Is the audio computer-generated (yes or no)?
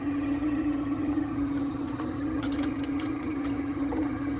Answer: yes